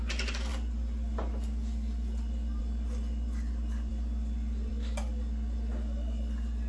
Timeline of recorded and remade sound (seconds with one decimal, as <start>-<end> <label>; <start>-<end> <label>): 0.0-6.7 recorded